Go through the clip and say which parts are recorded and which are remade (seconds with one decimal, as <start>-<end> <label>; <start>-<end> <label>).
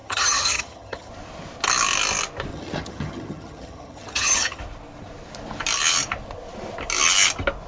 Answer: 0.0-1.1 remade; 1.1-2.5 recorded; 2.5-4.6 remade; 4.6-7.7 recorded